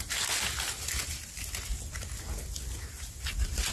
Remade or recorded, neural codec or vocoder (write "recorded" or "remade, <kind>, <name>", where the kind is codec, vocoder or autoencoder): recorded